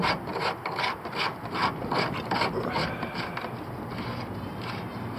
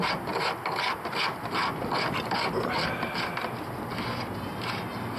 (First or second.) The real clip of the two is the second